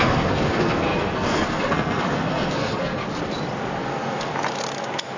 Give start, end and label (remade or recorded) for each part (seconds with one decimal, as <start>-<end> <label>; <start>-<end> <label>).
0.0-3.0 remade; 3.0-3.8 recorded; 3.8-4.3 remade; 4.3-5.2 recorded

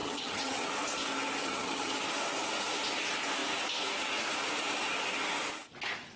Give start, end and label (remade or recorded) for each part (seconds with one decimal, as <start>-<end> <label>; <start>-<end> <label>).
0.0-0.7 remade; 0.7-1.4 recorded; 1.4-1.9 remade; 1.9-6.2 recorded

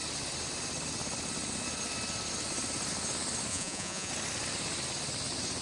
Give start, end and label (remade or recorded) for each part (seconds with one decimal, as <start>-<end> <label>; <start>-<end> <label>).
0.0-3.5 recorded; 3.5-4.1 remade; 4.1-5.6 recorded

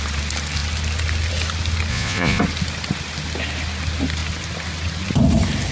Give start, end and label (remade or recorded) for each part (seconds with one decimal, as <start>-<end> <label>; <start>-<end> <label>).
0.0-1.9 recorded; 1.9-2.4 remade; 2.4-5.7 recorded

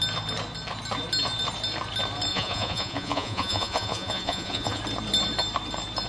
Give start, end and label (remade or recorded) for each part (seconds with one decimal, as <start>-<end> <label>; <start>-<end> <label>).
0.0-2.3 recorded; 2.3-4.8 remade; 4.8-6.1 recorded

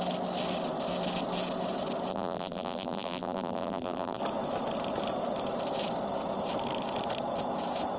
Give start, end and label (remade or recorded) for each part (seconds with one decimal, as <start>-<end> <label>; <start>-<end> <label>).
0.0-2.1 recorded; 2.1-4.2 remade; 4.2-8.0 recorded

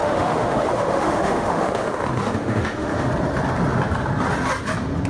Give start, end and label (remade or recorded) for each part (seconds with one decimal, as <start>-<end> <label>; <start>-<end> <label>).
0.0-3.1 remade; 3.1-5.1 recorded